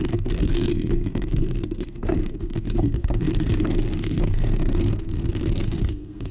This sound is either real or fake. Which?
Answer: fake